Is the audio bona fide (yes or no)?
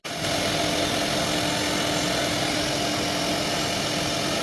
yes